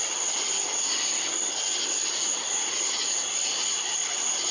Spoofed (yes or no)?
no